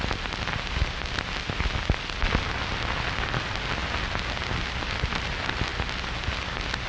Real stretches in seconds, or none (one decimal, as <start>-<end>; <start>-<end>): 0.0-6.9